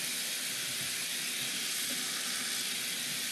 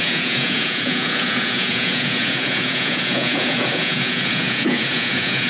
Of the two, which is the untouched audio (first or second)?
first